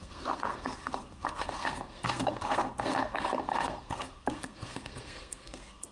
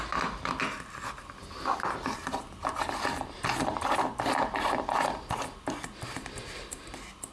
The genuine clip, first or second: second